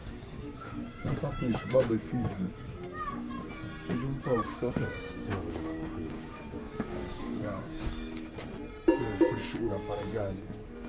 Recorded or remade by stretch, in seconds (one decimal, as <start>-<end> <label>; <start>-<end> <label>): 0.0-3.3 remade; 3.3-4.3 recorded; 4.3-8.3 remade; 8.3-9.4 recorded; 9.4-10.9 remade